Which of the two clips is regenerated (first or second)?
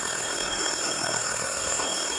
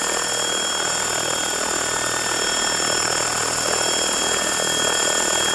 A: first